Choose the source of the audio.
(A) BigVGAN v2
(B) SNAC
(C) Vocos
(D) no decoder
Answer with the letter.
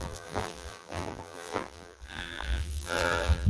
A